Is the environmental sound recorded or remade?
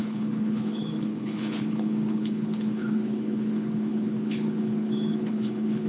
remade